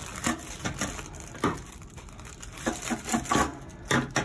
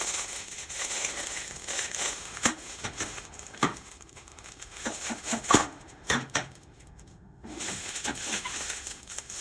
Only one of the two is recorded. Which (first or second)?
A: first